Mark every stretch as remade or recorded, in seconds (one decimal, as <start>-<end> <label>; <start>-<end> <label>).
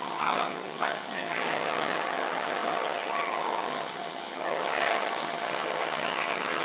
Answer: 0.0-6.6 remade